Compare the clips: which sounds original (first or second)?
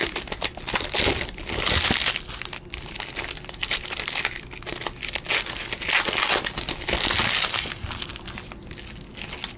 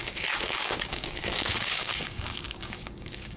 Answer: first